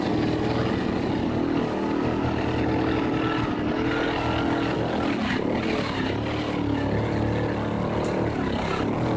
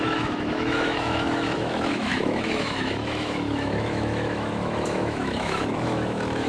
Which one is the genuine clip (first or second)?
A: first